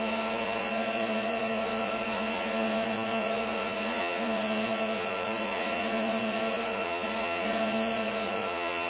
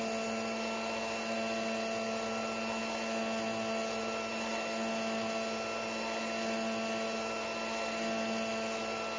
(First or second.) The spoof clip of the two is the first